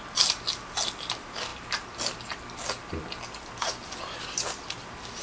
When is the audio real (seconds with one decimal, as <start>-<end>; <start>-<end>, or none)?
0.0-5.2